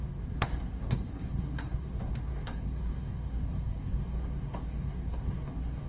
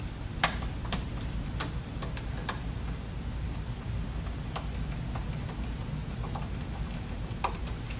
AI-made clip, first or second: first